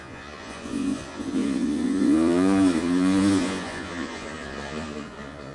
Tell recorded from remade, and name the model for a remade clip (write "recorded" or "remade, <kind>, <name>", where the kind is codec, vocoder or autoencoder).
remade, vocoder, Vocos